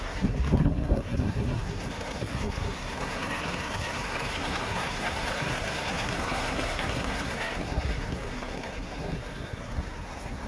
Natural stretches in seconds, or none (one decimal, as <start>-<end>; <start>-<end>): none